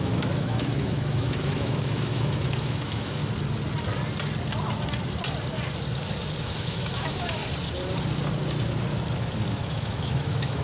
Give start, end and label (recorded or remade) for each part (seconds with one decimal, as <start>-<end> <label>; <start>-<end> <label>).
0.0-3.2 remade; 3.2-6.4 recorded; 6.4-7.4 remade; 7.4-9.5 recorded; 9.5-10.6 remade